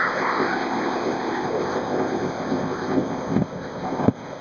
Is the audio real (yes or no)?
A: no